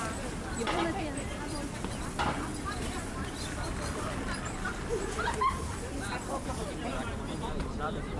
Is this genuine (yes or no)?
no